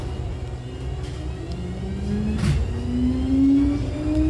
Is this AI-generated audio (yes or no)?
no